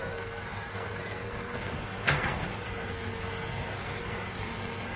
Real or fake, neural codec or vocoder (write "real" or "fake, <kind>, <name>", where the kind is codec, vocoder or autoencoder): fake, codec, SNAC